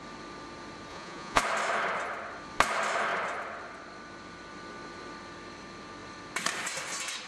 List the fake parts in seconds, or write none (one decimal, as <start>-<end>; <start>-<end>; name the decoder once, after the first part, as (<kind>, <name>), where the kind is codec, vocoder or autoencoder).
0.9-1.4 (vocoder, Vocos)